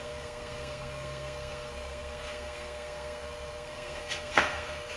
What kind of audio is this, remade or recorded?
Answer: remade